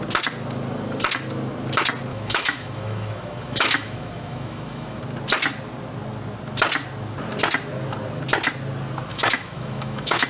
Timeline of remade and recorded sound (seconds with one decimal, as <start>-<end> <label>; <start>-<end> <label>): 0.0-2.1 recorded; 2.1-5.0 remade; 5.0-9.1 recorded; 9.1-10.3 remade

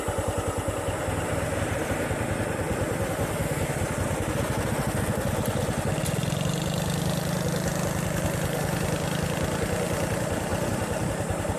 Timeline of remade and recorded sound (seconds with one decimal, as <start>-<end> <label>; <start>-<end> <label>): 0.0-11.6 recorded